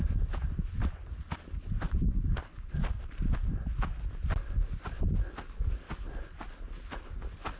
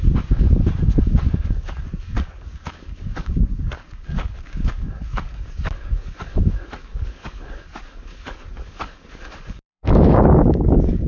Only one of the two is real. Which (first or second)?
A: first